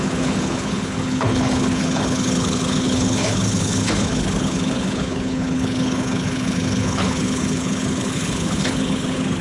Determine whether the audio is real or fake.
fake